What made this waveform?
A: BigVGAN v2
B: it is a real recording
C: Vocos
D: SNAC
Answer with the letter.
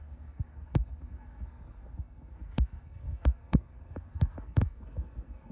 D